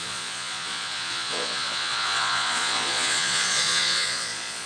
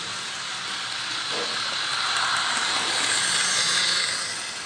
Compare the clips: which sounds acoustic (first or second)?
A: second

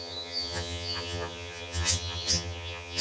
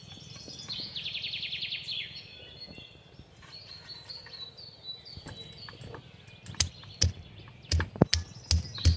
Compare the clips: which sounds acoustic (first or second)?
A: second